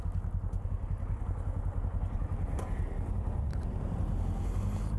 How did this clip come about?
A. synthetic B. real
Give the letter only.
B